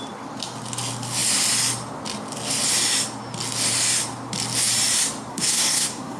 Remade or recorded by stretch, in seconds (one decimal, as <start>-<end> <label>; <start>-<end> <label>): 0.0-5.3 recorded; 5.3-6.2 remade